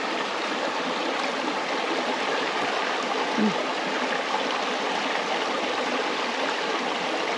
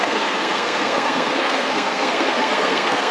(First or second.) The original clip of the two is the first